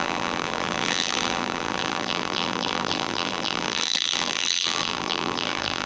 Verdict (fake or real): fake